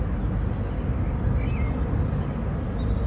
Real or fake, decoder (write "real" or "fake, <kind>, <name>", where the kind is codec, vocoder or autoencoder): real